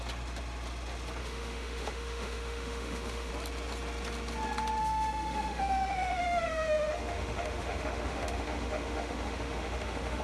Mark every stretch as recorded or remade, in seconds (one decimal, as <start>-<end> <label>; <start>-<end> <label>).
0.0-1.2 recorded; 1.2-3.3 remade; 3.3-4.8 recorded; 4.8-10.2 remade

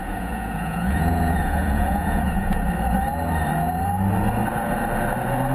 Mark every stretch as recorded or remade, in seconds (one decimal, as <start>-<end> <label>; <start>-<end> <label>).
0.0-2.6 remade; 2.6-5.5 recorded

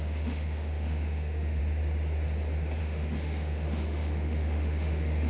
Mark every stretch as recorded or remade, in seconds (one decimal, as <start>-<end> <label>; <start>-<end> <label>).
0.0-1.6 remade; 1.6-2.8 recorded; 2.8-5.3 remade